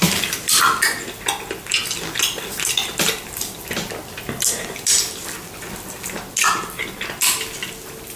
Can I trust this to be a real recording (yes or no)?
yes